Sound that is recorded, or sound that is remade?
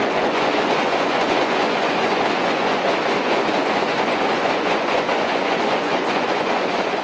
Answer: remade